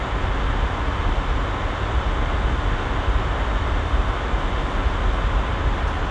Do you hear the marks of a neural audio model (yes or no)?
no